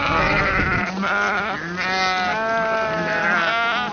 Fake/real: real